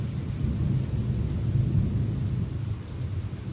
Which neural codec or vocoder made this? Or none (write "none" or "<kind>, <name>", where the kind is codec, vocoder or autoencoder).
none